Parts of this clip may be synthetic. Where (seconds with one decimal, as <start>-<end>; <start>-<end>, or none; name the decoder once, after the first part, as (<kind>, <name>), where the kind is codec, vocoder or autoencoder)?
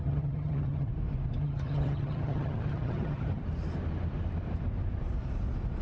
0.0-0.9 (vocoder, HiFi-GAN); 1.4-3.4